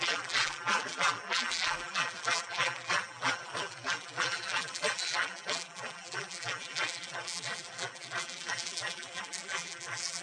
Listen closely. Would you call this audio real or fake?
fake